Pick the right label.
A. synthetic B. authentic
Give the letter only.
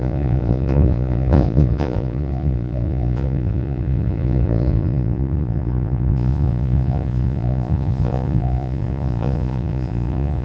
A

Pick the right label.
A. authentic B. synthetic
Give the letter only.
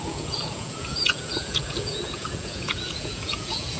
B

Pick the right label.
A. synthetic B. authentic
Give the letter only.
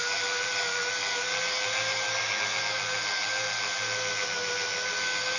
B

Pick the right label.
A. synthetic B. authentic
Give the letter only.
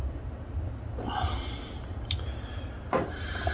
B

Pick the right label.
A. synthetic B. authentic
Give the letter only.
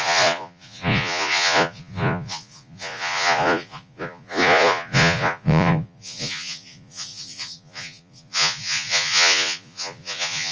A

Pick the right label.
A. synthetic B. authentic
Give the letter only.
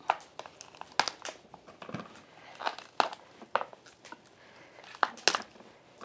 B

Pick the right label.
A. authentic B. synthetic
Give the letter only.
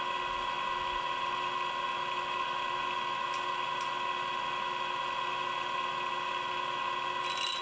A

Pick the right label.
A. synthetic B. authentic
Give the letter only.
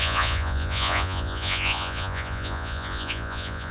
A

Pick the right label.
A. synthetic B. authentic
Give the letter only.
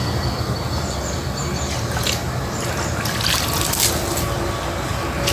B